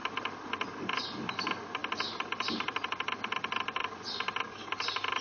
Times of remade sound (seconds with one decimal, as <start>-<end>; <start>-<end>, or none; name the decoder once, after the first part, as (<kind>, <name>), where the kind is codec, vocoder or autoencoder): 0.0-1.3 (vocoder, BigVGAN v2); 1.8-5.2

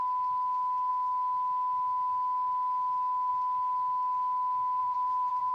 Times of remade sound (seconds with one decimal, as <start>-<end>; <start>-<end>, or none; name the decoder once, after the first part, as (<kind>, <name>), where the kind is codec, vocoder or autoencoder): 4.8-5.5 (vocoder, BigVGAN v2)

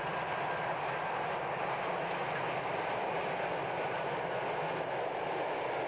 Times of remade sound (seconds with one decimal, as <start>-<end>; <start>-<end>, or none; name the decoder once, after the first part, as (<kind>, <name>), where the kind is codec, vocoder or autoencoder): 2.2-4.2 (vocoder, BigVGAN v2)

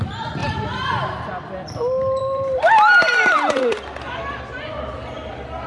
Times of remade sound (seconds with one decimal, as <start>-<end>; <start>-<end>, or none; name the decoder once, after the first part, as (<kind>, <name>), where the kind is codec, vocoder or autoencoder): 0.4-0.9 (vocoder, BigVGAN v2); 2.2-3.6